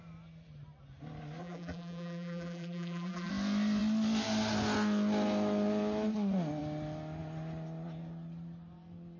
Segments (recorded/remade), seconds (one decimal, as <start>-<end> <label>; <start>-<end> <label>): 0.0-1.4 recorded; 1.4-3.3 remade; 3.3-9.2 recorded